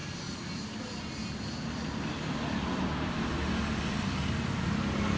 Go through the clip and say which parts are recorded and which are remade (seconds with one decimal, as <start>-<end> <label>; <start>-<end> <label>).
0.0-3.1 remade; 3.1-5.2 recorded